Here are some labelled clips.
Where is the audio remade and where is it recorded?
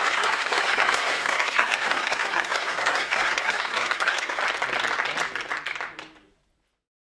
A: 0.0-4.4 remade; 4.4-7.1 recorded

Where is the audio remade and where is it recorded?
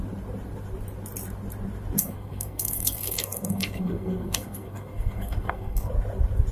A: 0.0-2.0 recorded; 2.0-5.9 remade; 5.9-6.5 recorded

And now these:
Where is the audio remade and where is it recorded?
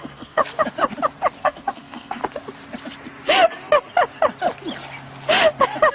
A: 0.0-0.4 remade; 0.4-1.4 recorded; 1.4-2.2 remade; 2.2-5.9 recorded